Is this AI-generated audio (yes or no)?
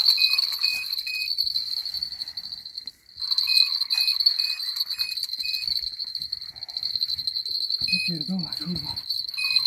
no